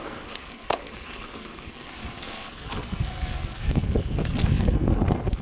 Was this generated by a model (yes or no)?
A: yes